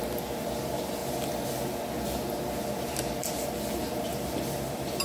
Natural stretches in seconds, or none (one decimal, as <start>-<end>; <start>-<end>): 0.0-1.0; 1.8-4.1